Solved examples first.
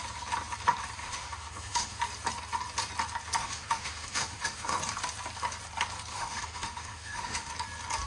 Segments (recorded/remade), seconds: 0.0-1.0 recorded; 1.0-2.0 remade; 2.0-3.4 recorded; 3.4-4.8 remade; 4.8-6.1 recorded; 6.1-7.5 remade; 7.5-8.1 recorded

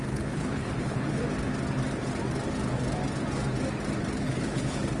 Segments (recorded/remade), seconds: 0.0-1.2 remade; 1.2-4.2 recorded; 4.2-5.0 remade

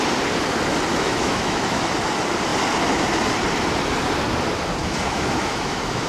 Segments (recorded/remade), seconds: 0.0-0.9 recorded; 0.9-1.8 remade; 1.8-4.8 recorded; 4.8-6.1 remade

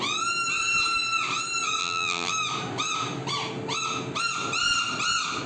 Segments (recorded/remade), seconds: 0.0-1.8 recorded; 1.8-2.3 remade; 2.3-5.5 recorded

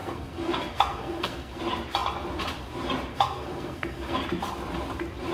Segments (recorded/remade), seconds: 0.0-1.6 remade; 1.6-3.1 recorded; 3.1-4.2 remade; 4.2-5.3 recorded

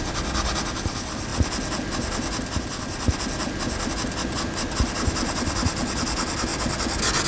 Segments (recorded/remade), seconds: 0.0-7.3 recorded

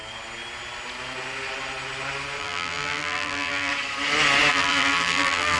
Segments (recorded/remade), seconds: 0.0-2.4 recorded; 2.4-3.7 remade; 3.7-4.5 recorded; 4.5-5.6 remade